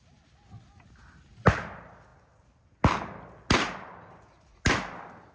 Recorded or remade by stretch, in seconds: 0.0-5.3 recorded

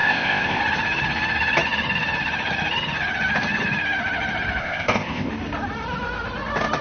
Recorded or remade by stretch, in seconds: 0.0-0.6 remade; 0.6-4.6 recorded; 4.6-5.3 remade; 5.3-6.8 recorded

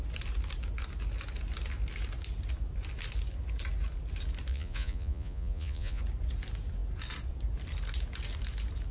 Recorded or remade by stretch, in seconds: 0.0-4.5 recorded; 4.5-6.0 remade; 6.0-8.9 recorded

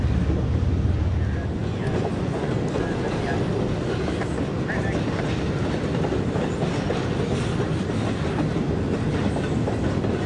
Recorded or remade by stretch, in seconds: 0.0-1.6 recorded; 1.6-2.5 remade; 2.5-10.3 recorded

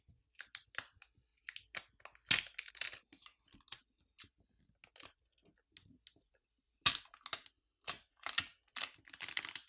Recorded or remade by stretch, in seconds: 0.0-9.7 recorded

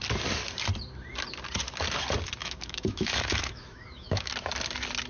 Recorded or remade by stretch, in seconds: 0.0-2.4 recorded; 2.4-4.3 remade; 4.3-5.1 recorded

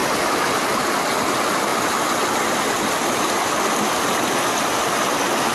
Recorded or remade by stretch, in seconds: 0.0-5.5 recorded